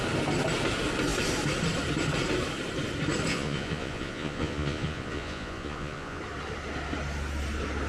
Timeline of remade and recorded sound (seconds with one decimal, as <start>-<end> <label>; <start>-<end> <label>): 0.0-3.3 recorded; 3.3-6.2 remade; 6.2-7.9 recorded